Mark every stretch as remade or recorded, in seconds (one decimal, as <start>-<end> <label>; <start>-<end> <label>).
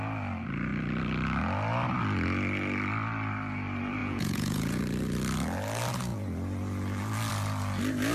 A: 0.0-4.0 recorded; 4.0-4.8 remade; 4.8-8.1 recorded